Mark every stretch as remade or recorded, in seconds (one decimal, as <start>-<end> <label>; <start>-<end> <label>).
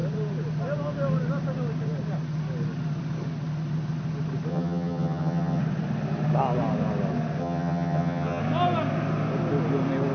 0.0-4.5 recorded; 4.5-5.6 remade; 5.6-7.4 recorded; 7.4-8.4 remade; 8.4-10.1 recorded